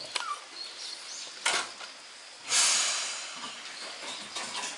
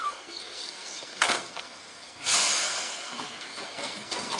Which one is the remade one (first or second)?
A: second